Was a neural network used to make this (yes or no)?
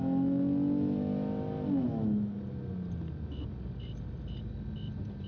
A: no